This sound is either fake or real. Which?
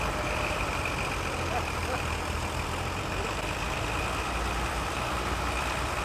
fake